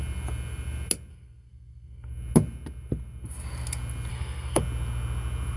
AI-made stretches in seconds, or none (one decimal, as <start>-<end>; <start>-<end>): 1.1-2.1; 4.1-4.6